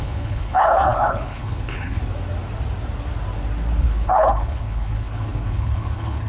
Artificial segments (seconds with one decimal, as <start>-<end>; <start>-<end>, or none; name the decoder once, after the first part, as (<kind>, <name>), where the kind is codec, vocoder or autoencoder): 0.0-2.0 (codec, HILCodec); 3.8-6.3